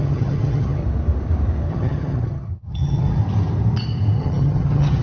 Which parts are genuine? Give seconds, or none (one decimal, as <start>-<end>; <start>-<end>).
0.8-1.7; 3.2-4.2